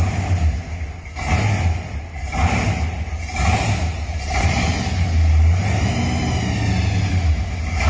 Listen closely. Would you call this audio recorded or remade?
recorded